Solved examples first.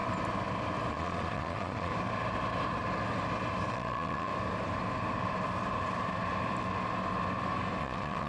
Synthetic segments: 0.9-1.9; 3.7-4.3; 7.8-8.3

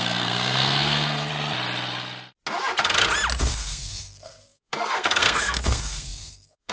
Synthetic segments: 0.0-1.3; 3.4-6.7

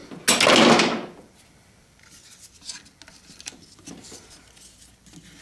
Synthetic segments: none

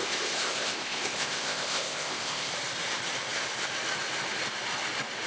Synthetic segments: 0.0-2.5